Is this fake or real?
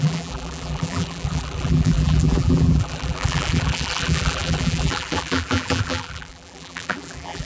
fake